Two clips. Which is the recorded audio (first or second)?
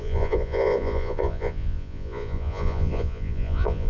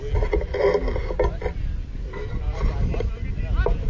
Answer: second